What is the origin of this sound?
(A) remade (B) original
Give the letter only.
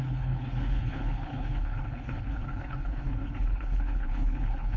A